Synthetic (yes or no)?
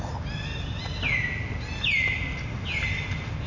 no